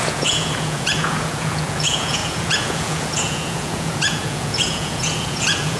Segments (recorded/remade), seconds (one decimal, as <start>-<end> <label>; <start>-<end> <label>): 0.0-5.8 remade